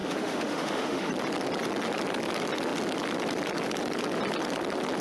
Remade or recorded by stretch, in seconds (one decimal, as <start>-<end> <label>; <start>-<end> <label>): 0.0-1.1 remade; 1.1-5.0 recorded